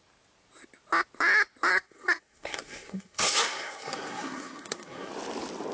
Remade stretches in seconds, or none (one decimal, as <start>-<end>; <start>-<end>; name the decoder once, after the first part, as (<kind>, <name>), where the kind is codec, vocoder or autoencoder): 1.7-5.1 (codec, SNAC)

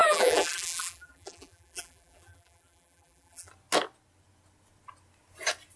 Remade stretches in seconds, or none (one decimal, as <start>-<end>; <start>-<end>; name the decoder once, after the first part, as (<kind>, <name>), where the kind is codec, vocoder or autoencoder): 0.0-3.5 (vocoder, BigVGAN v2)

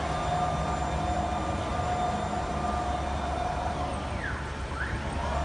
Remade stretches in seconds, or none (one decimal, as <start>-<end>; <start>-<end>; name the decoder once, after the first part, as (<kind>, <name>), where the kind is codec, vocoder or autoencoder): none

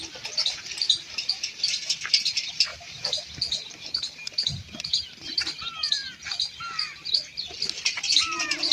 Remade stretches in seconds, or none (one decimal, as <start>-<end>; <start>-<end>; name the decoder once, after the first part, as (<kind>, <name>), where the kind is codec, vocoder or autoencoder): 2.7-3.4 (vocoder, BigVGAN v2)

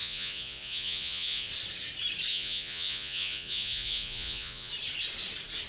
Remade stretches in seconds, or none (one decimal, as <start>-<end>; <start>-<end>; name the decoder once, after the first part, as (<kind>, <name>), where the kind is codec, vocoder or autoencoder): 0.0-1.5 (vocoder, Vocos); 2.3-4.7

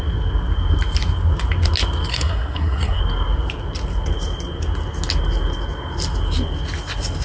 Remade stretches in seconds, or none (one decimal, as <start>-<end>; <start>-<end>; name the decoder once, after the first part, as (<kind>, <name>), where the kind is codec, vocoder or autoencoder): 2.1-3.0 (codec, SNAC)